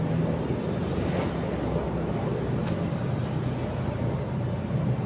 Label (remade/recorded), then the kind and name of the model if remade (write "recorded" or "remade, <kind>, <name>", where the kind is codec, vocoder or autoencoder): recorded